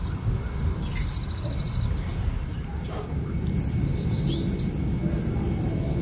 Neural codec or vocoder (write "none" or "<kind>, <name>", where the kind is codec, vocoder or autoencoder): none